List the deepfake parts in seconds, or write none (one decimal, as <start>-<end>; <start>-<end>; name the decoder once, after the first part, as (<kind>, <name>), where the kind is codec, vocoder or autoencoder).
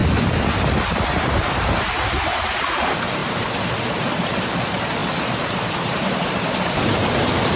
1.1-7.6 (vocoder, BigVGAN v2)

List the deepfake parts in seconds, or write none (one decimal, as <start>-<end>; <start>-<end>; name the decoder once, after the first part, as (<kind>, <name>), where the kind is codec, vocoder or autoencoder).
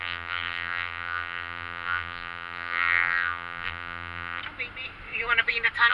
0.0-4.4 (vocoder, BigVGAN v2)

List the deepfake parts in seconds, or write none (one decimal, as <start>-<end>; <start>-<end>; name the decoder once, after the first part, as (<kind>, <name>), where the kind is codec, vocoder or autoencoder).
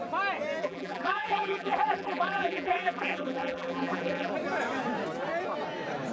0.6-4.3 (vocoder, BigVGAN v2)